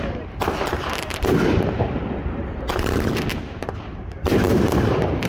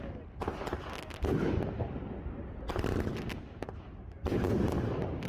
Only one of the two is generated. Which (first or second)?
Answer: first